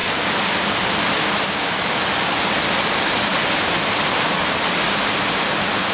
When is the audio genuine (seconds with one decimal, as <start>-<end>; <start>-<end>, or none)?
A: 0.0-3.3; 4.4-5.9